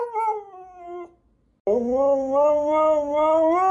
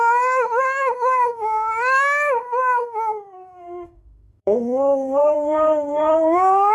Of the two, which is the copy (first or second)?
second